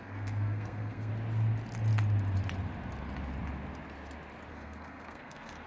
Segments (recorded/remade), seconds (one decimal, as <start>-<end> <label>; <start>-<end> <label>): 0.0-1.1 remade; 1.1-4.5 recorded; 4.5-5.7 remade